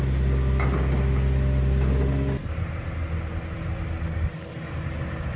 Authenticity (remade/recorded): recorded